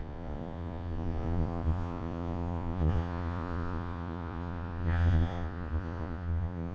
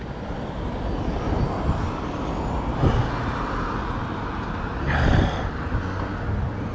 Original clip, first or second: second